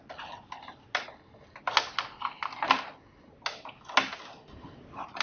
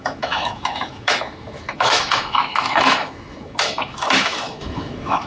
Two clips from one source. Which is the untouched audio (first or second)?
first